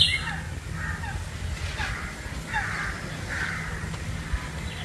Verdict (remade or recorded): recorded